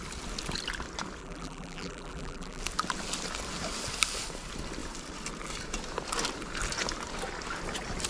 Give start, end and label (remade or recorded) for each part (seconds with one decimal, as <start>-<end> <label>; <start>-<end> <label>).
0.0-1.2 recorded; 1.2-2.6 remade; 2.6-8.1 recorded